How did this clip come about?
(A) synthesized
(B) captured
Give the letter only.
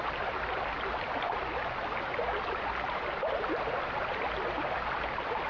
B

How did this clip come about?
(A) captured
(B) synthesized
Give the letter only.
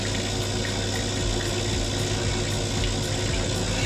A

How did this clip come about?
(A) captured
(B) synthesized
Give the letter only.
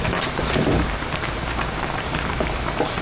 B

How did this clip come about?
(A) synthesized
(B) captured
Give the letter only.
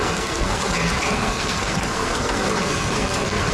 A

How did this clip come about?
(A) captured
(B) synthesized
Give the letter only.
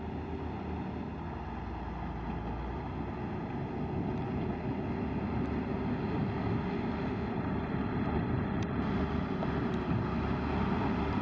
A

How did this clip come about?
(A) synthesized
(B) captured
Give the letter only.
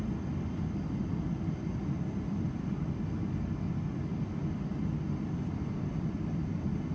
B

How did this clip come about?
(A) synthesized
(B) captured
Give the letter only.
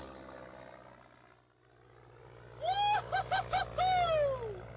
B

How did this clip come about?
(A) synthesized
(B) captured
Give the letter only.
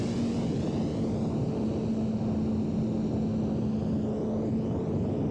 B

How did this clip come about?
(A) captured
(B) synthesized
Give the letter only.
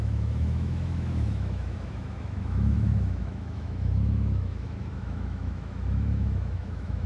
B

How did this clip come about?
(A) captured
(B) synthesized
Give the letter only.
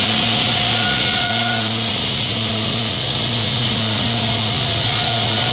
B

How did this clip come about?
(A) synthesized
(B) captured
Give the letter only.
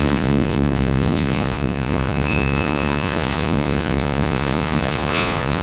A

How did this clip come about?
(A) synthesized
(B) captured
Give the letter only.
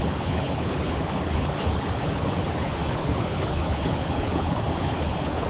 A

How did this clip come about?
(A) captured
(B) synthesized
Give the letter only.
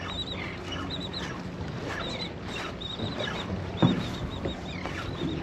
A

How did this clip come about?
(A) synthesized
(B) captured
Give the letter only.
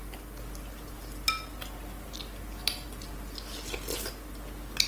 B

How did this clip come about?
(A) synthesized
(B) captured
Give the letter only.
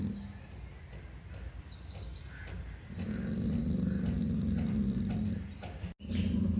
B